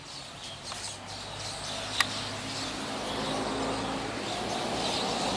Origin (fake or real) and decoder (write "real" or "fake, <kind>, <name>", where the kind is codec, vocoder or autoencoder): real